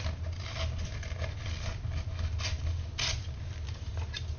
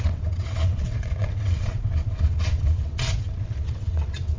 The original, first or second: first